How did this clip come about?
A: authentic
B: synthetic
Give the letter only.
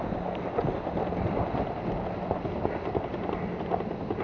A